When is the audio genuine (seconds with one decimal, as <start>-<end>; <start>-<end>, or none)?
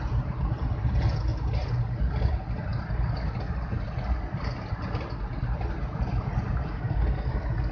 0.0-7.7